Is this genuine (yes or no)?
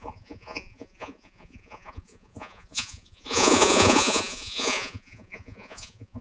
no